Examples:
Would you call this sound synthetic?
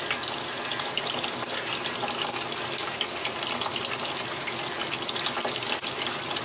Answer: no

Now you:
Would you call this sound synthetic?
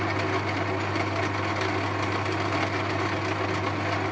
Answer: no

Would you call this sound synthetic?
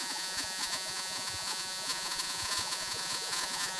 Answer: yes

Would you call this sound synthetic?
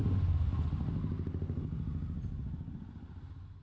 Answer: no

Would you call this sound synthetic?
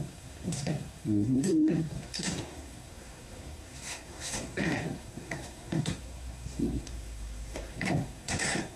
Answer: yes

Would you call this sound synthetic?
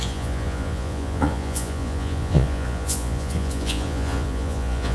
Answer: yes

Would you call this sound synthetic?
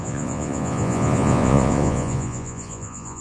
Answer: yes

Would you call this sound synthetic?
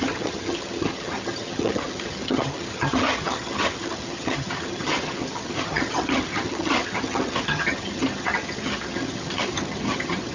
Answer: yes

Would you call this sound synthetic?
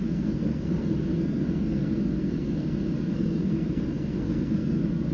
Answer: yes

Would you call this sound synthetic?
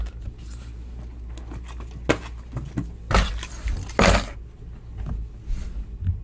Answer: no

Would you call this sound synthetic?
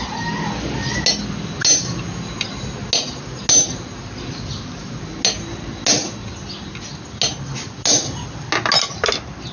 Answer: no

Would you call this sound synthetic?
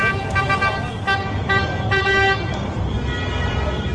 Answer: yes